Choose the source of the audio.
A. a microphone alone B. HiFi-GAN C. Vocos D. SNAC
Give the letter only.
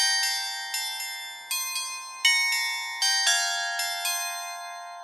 A